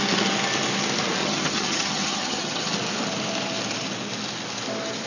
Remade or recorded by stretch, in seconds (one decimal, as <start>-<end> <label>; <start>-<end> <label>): 0.0-1.2 recorded; 1.2-2.7 remade; 2.7-5.1 recorded